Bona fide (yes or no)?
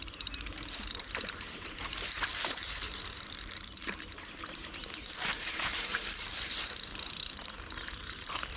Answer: no